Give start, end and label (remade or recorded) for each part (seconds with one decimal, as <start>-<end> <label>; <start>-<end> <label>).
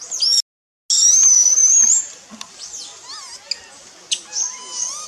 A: 0.0-5.1 recorded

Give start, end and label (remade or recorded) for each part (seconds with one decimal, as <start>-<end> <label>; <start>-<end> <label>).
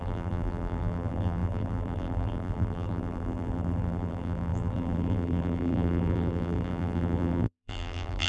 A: 0.0-8.3 remade